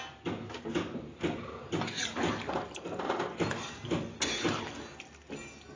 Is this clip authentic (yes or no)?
yes